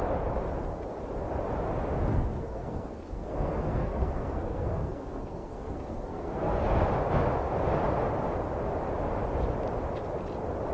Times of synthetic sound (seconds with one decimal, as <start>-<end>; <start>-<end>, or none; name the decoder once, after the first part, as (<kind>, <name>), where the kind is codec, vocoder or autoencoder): 2.1-6.8 (codec, SNAC)